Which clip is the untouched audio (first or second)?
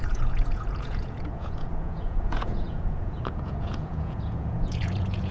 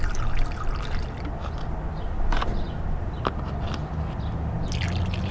second